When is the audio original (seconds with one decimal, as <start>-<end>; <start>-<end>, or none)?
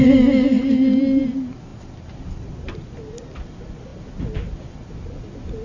0.0-5.6